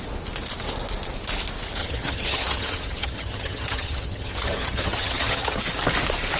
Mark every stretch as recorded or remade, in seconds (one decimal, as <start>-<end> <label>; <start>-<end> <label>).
0.0-1.8 recorded; 1.8-5.6 remade; 5.6-6.4 recorded